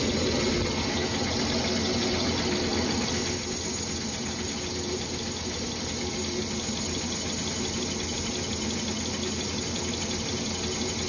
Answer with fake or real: real